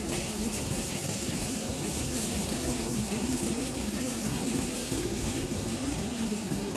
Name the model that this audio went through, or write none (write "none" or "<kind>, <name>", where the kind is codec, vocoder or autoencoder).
codec, SNAC